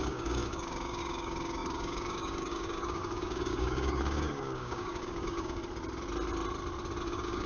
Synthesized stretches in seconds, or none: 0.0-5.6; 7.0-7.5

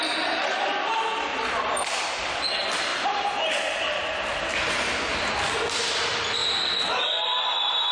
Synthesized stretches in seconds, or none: 1.3-1.8; 2.9-4.0

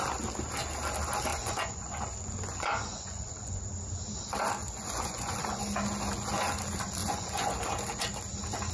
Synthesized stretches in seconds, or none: 1.3-3.6; 4.6-5.6; 7.0-7.6